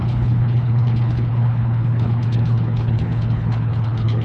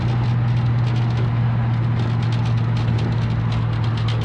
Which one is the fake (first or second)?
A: first